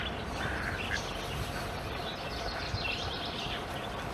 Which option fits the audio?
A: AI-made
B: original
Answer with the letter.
B